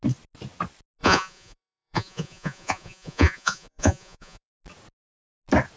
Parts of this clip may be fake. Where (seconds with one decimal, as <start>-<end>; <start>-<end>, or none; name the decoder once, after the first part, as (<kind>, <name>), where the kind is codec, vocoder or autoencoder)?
1.0-4.5 (vocoder, Vocos)